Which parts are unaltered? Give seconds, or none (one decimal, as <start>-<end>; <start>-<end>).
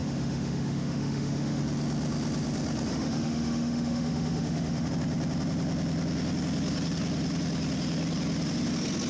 1.6-2.9; 4.9-9.1